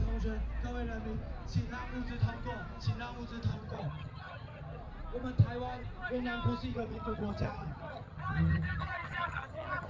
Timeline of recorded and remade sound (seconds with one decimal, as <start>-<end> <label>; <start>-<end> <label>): 0.0-3.5 recorded; 3.5-4.8 remade; 4.8-6.7 recorded; 6.7-9.9 remade